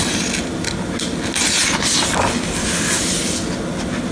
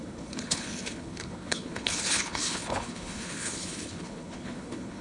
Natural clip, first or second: first